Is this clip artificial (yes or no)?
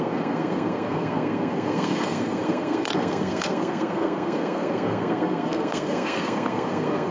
yes